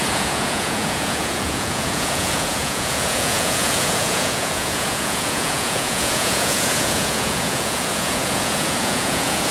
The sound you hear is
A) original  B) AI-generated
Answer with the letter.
B